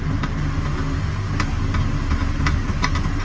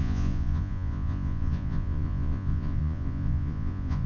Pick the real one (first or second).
first